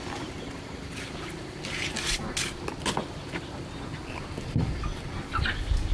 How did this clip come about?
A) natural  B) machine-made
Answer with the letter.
A